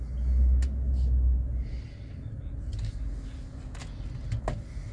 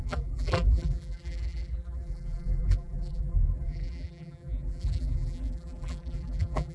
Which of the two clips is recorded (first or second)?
first